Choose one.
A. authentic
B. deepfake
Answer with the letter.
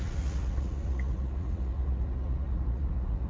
B